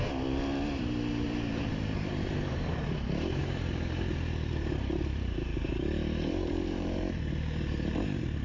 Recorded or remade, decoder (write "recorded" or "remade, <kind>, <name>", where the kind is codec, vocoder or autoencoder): remade, vocoder, BigVGAN v2